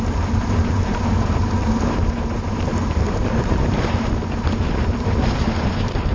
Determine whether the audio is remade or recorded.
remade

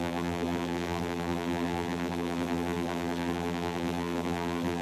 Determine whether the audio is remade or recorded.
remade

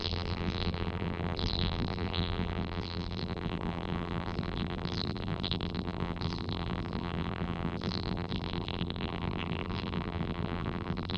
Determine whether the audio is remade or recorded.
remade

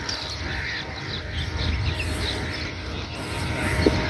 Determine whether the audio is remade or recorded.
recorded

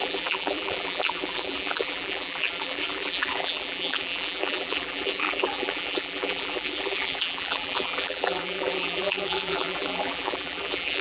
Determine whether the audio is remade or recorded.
remade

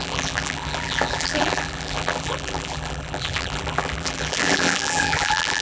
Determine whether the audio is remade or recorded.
remade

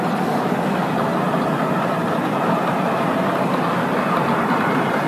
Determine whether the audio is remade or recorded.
recorded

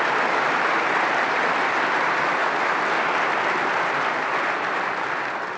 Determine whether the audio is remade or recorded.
remade